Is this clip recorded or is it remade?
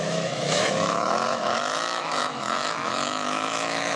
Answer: remade